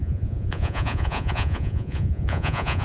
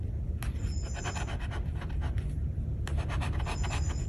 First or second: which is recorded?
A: second